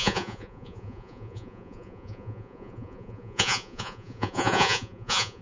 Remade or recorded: remade